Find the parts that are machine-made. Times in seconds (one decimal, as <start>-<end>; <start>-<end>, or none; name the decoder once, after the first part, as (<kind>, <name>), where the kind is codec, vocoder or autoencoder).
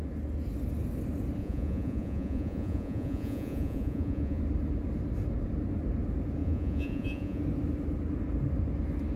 1.4-4.4 (vocoder, Vocos); 6.4-7.4